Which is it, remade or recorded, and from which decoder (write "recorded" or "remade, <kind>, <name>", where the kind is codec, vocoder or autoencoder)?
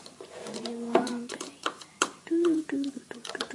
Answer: remade, vocoder, Vocos